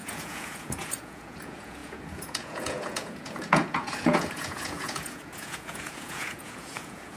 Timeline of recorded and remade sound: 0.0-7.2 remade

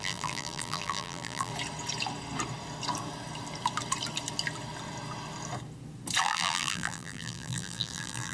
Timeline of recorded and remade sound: 0.0-1.5 remade; 1.5-6.2 recorded; 6.2-8.3 remade